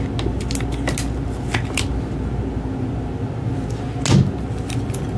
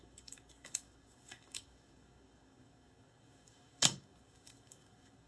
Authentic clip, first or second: first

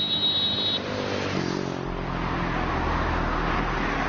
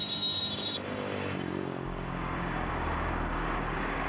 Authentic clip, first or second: first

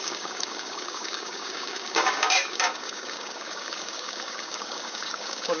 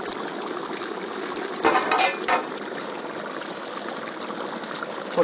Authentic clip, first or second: second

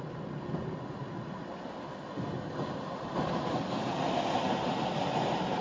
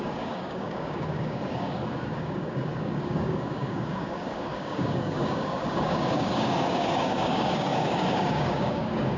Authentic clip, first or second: first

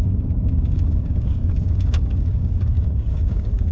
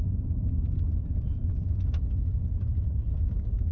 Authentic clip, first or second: second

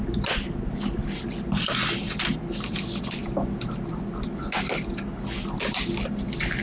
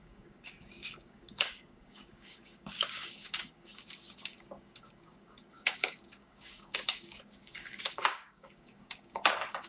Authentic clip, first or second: first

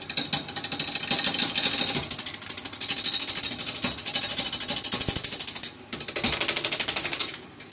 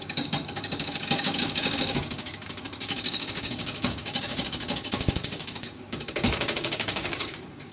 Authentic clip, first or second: first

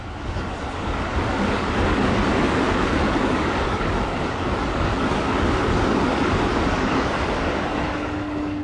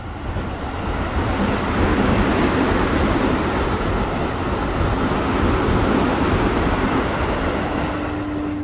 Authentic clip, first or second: second